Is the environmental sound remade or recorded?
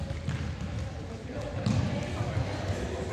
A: recorded